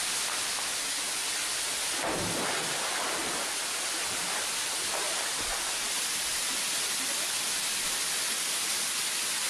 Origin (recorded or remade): recorded